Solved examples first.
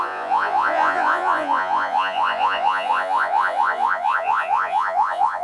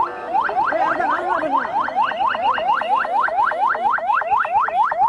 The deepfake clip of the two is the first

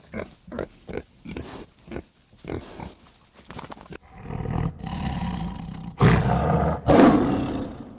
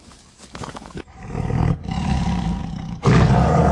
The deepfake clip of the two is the second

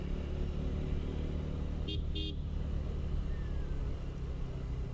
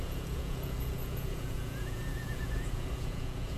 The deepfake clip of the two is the second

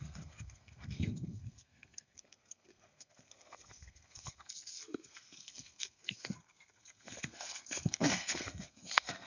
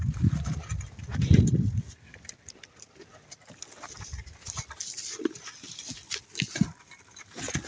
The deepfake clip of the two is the first